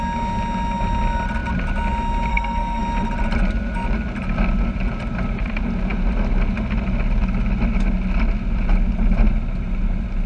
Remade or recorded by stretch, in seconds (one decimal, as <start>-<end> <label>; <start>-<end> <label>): 0.0-2.3 recorded; 2.3-2.8 remade; 2.8-10.3 recorded